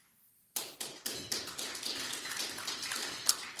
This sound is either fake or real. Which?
real